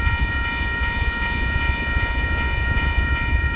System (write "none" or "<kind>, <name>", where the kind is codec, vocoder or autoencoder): vocoder, Vocos